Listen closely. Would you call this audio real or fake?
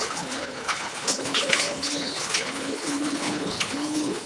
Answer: fake